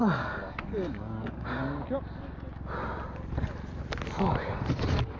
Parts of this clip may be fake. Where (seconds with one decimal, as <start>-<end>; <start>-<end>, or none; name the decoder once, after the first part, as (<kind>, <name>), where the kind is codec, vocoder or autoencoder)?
0.0-1.6 (codec, DAC); 4.7-5.2